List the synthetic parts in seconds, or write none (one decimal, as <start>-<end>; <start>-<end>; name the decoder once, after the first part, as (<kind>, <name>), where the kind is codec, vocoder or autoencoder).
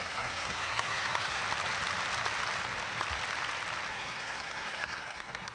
0.0-1.4 (codec, SNAC); 3.9-5.5